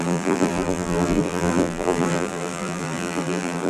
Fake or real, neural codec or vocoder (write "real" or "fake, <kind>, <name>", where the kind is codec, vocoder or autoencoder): fake, vocoder, BigVGAN v2